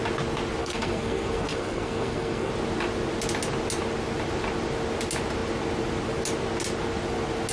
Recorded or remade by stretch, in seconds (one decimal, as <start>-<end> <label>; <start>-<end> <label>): 0.0-0.6 recorded; 0.6-2.5 remade; 2.5-7.5 recorded